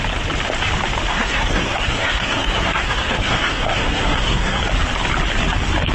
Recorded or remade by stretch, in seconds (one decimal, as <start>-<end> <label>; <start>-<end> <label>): 0.0-1.1 recorded; 1.1-4.6 remade; 4.6-5.9 recorded